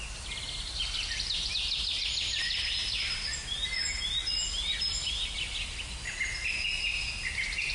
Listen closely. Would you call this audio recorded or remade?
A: recorded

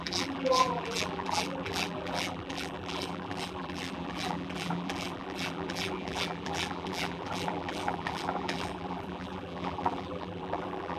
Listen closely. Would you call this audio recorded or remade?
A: remade